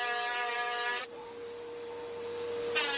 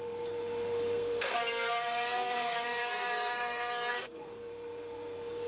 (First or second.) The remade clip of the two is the second